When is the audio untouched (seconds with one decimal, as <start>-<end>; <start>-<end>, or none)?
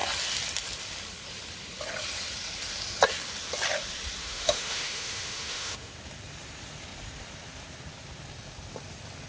0.0-4.2; 5.9-9.3